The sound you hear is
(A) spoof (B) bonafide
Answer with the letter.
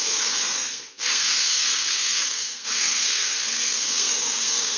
A